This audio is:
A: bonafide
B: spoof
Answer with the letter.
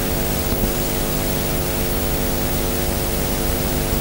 B